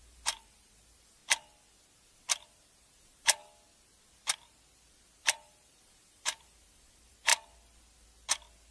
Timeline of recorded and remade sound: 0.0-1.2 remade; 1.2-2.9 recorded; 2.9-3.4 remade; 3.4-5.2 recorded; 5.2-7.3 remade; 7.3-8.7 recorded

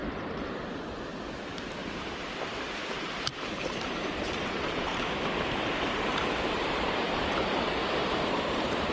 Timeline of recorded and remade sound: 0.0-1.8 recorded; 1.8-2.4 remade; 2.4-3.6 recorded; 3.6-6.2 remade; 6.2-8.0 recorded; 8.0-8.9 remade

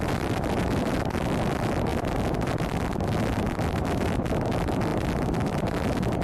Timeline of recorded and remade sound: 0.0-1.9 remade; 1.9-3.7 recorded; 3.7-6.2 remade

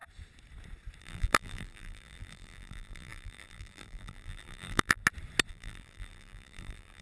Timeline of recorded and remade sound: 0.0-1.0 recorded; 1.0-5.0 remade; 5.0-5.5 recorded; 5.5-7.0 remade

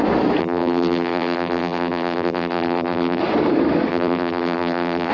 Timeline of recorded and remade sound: 0.0-0.4 recorded; 0.4-3.2 remade; 3.2-3.9 recorded; 3.9-5.1 remade

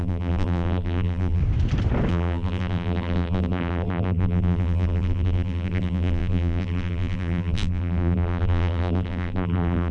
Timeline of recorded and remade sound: 0.0-1.4 remade; 1.4-2.1 recorded; 2.1-9.9 remade

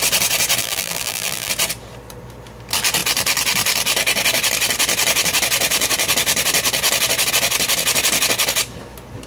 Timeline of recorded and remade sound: 0.0-0.6 recorded; 0.6-1.5 remade; 1.5-9.3 recorded

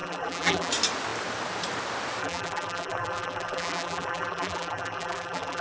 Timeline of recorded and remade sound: 0.0-0.7 remade; 0.7-2.2 recorded; 2.2-5.6 remade